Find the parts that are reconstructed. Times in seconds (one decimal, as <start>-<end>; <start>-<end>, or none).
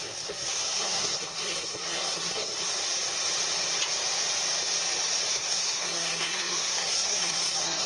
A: 0.0-2.5; 5.3-7.9